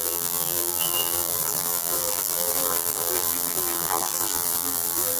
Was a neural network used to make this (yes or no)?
yes